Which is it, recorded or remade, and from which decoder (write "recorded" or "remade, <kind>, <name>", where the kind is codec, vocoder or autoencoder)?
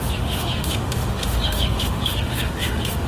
remade, autoencoder, DAC-VAE